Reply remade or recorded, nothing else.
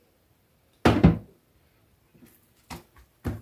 recorded